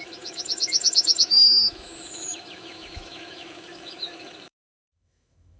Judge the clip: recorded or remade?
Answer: remade